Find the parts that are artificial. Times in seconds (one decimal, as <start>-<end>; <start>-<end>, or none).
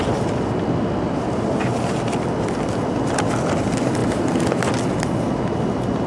none